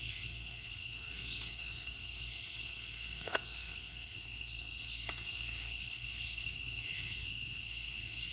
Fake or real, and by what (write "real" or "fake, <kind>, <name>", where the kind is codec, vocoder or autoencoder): fake, codec, SNAC